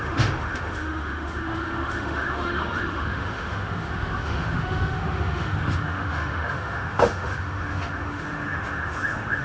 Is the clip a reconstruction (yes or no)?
yes